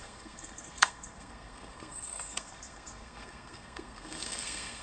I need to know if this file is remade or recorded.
remade